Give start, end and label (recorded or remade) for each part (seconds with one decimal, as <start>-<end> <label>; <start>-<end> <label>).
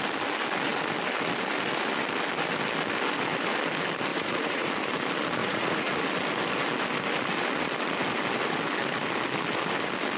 0.0-4.1 recorded; 4.1-4.7 remade; 4.7-5.4 recorded; 5.4-6.0 remade; 6.0-10.2 recorded